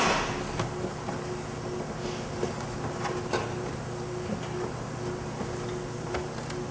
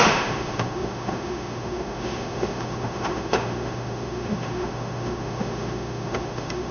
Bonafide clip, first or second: first